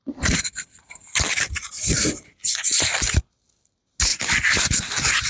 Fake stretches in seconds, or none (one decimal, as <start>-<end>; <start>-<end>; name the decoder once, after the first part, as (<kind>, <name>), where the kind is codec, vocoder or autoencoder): 0.0-3.2 (vocoder, BigVGAN v2); 4.1-5.3